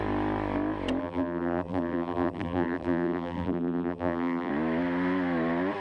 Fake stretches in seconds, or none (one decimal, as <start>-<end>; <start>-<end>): 1.0-4.5